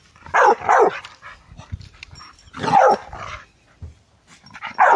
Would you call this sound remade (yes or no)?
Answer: no